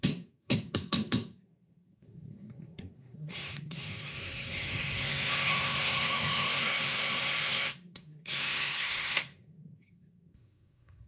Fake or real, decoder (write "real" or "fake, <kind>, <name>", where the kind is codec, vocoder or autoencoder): fake, codec, SNAC